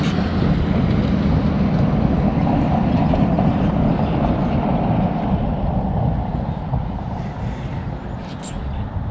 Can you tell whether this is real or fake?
real